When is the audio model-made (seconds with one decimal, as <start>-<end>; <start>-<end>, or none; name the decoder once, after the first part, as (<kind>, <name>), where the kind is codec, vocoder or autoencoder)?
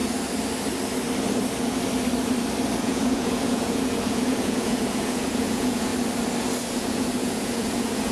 2.8-5.9 (vocoder, Vocos); 6.7-8.1